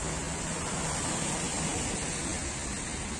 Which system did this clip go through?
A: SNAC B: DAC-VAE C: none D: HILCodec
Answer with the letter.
C